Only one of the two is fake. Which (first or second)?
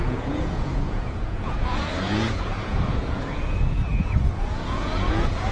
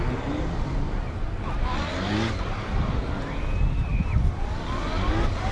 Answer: first